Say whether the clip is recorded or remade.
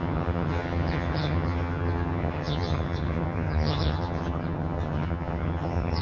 remade